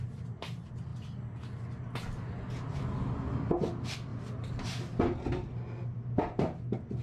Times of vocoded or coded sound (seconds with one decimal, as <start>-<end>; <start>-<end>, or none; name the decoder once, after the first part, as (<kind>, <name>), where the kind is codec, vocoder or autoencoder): none